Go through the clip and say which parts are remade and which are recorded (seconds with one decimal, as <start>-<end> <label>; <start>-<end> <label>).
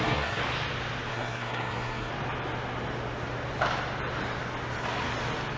0.0-0.4 remade; 0.4-1.1 recorded; 1.1-2.1 remade; 2.1-5.6 recorded